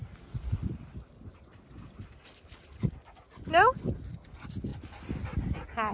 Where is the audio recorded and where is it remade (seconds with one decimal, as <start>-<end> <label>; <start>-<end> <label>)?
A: 0.0-5.9 recorded